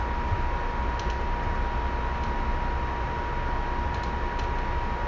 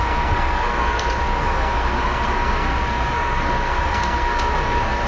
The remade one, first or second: second